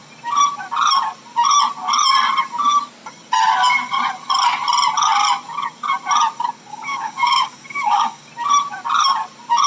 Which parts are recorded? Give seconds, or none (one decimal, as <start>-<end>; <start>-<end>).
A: 0.0-6.7; 8.3-9.7